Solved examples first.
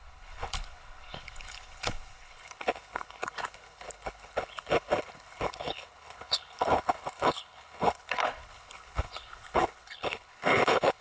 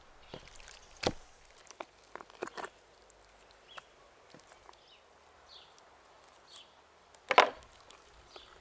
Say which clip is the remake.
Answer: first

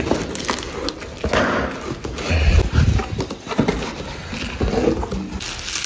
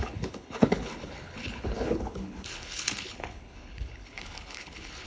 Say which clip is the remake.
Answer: second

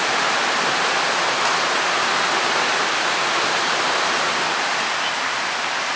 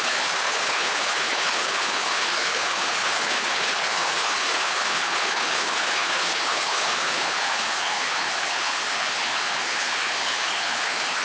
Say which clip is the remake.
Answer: second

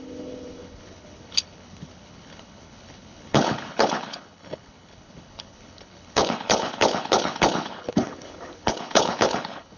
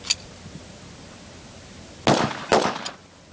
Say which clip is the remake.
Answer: first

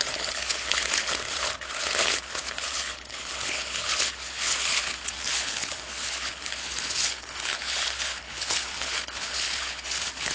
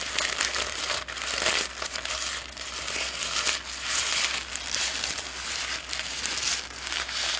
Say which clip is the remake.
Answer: first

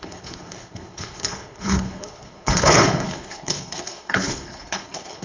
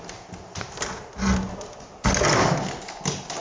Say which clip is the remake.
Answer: first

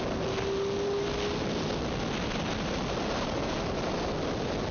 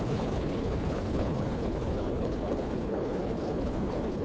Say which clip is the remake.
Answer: second